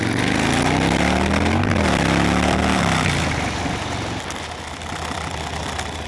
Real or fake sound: real